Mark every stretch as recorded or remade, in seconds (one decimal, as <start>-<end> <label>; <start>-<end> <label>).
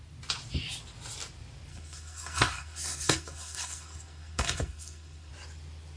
0.0-1.7 recorded; 1.7-5.3 remade; 5.3-6.0 recorded